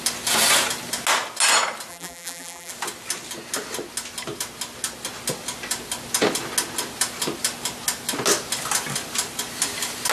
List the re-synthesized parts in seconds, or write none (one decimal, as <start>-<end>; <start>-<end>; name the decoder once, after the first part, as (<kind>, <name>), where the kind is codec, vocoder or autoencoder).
1.9-2.7 (vocoder, BigVGAN v2)